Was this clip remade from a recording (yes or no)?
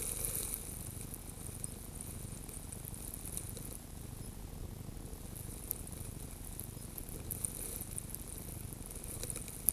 no